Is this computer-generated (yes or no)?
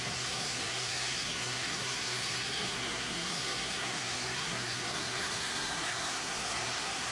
yes